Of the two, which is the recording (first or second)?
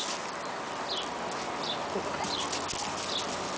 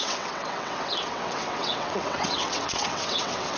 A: first